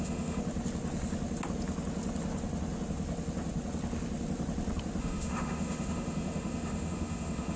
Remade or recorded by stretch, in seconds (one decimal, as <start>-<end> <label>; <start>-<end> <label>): 0.0-0.4 remade; 0.4-5.0 recorded; 5.0-7.6 remade